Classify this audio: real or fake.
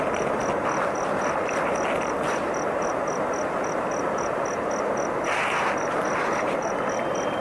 real